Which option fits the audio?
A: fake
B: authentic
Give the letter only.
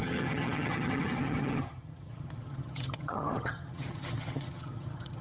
A